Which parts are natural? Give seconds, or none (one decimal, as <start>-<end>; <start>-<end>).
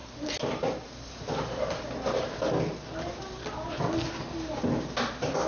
0.0-5.5